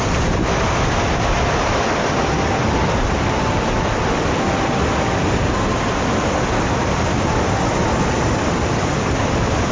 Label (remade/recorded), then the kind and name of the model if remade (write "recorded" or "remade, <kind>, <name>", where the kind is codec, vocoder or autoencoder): recorded